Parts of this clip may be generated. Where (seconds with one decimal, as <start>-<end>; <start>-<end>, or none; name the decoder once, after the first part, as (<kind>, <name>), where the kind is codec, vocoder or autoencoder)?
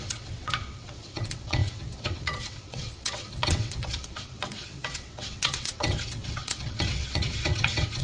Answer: 0.0-8.0 (vocoder, WaveNeXt)